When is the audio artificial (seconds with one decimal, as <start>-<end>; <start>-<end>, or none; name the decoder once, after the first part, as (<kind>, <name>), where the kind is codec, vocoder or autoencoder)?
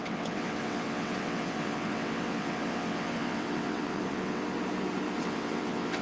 0.0-4.4 (vocoder, WaveNeXt); 5.2-6.0